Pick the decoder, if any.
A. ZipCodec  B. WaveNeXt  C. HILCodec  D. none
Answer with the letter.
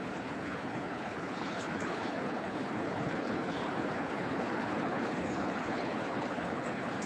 C